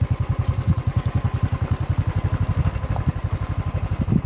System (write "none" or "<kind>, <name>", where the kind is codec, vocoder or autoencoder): none